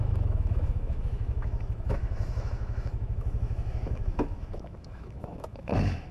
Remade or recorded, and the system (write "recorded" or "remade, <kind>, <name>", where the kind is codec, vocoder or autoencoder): remade, autoencoder, DAC-VAE